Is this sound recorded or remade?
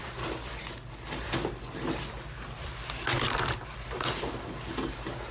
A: recorded